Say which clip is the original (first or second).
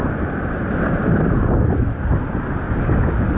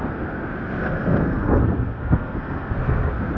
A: first